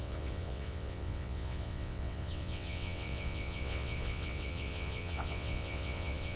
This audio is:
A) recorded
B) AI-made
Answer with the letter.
B